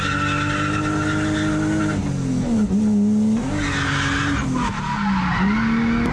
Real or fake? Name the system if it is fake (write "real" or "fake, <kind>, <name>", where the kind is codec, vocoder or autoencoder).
real